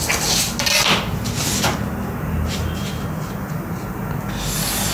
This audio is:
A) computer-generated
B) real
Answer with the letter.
B